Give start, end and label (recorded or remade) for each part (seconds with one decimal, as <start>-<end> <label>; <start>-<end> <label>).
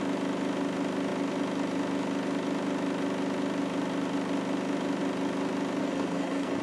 0.0-5.8 recorded; 5.8-6.6 remade